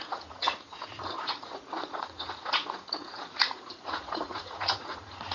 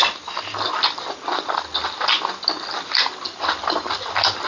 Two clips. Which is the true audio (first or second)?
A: second